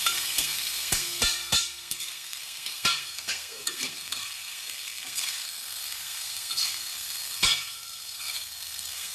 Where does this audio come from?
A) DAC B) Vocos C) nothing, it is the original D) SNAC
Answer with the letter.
D